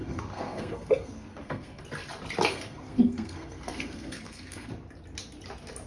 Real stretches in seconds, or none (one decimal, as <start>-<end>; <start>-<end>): 1.8-2.5; 4.7-5.9